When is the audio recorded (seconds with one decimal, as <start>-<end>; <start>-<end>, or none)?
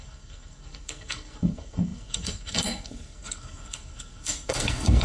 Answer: none